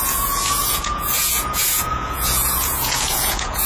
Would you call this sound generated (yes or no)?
yes